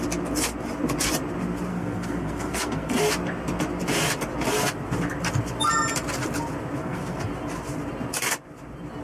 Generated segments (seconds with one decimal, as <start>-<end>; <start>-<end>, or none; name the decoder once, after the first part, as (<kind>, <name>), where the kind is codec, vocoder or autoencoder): 1.7-3.0 (codec, SNAC); 6.8-7.3